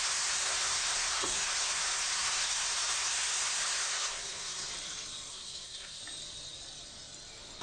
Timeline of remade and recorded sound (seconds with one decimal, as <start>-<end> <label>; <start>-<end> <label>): 0.0-4.7 remade; 4.7-5.3 recorded; 5.3-6.0 remade; 6.0-7.6 recorded